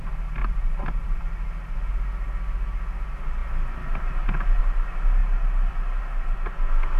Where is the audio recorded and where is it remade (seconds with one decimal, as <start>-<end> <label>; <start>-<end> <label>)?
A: 0.0-0.4 recorded; 0.4-1.9 remade; 1.9-5.2 recorded; 5.2-6.0 remade; 6.0-7.0 recorded